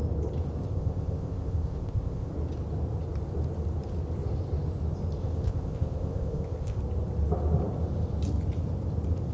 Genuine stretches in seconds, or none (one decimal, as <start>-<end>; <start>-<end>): 0.0-0.6; 2.3-5.2; 6.8-9.3